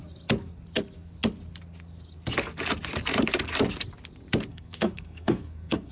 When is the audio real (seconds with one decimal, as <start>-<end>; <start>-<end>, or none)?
0.0-4.5